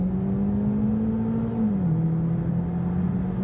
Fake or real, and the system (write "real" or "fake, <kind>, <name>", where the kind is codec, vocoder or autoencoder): real